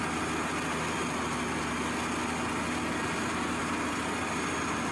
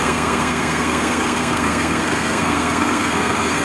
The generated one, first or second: second